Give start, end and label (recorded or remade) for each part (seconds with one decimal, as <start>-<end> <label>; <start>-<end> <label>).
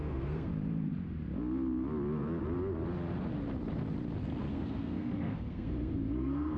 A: 0.0-0.5 remade; 0.5-4.5 recorded; 4.5-6.6 remade